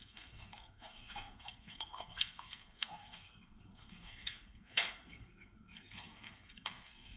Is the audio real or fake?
fake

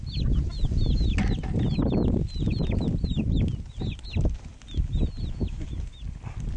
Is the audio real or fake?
real